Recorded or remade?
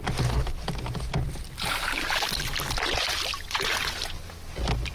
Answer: recorded